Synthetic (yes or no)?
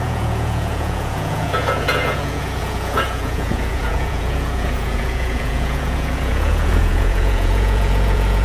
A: yes